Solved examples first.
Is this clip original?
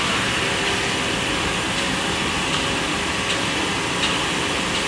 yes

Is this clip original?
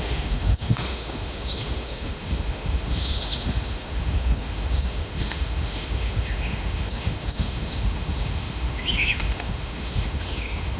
no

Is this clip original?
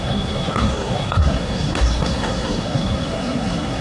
no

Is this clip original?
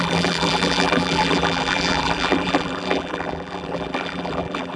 no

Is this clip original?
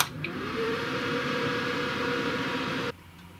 no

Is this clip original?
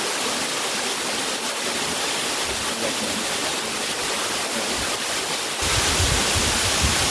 yes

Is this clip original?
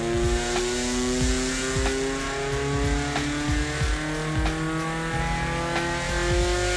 yes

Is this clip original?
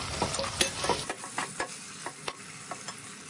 yes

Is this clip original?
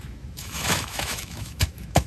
no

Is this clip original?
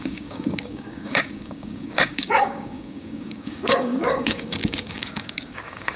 no